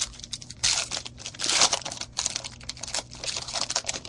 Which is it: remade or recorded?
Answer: remade